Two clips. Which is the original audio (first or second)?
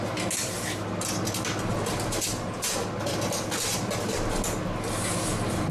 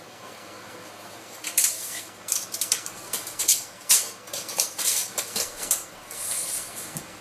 first